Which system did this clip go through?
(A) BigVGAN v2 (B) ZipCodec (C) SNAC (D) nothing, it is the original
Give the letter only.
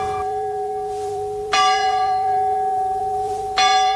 A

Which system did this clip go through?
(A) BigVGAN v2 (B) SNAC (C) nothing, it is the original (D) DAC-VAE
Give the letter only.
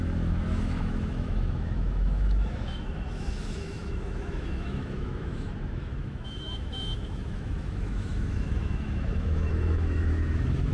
D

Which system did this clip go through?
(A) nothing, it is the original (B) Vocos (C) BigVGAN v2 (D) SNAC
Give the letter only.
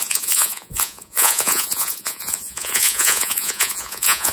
B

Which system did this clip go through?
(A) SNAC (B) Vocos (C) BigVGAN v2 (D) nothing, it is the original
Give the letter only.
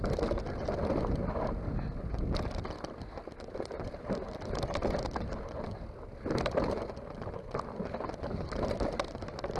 D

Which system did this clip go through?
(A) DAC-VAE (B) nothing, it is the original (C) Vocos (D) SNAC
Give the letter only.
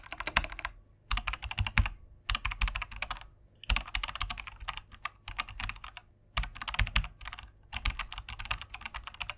B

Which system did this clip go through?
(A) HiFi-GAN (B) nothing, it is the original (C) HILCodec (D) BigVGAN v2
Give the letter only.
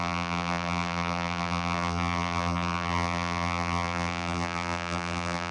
D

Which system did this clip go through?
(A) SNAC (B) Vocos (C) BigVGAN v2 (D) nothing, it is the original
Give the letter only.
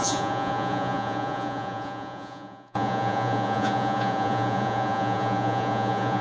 B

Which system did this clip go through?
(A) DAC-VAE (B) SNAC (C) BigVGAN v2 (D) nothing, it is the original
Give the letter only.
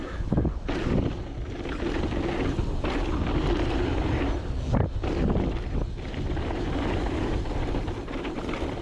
D